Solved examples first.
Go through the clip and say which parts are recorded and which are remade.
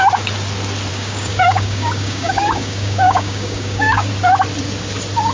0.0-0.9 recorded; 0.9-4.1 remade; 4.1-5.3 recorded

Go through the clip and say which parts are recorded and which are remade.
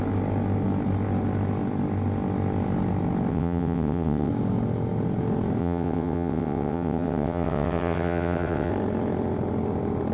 0.0-3.3 recorded; 3.3-4.3 remade; 4.3-5.6 recorded; 5.6-8.7 remade; 8.7-10.1 recorded